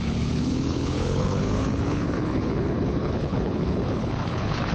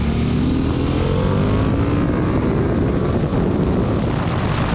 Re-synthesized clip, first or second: first